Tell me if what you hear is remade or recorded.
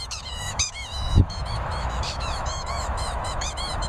remade